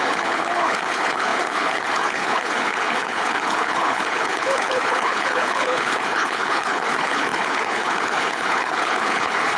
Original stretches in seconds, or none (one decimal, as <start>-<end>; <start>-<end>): none